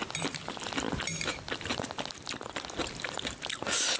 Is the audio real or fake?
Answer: real